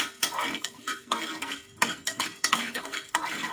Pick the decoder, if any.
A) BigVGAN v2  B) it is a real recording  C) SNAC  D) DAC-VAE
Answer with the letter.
C